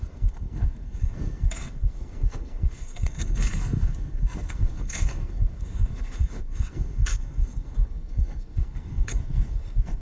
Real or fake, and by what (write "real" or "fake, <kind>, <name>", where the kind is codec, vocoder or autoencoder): fake, codec, SNAC